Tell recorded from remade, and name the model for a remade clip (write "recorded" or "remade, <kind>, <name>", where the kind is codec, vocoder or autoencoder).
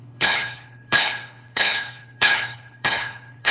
remade, codec, HILCodec